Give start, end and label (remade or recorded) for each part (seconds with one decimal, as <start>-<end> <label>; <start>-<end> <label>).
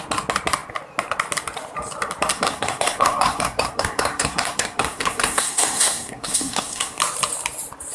0.0-2.3 recorded; 2.3-7.0 remade; 7.0-7.9 recorded